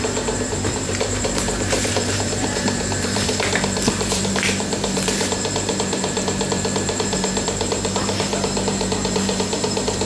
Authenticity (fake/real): fake